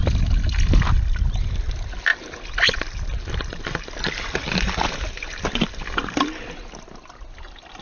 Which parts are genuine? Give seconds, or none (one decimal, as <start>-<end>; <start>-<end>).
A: 0.0-7.8